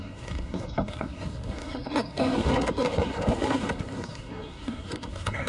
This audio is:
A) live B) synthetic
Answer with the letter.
B